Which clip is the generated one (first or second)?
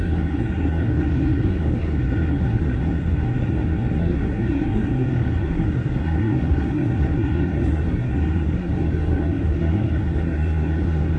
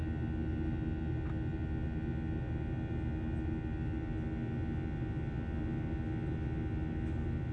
first